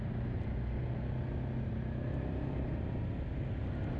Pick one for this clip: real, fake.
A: real